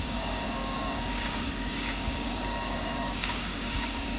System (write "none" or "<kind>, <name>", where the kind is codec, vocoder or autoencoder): codec, DAC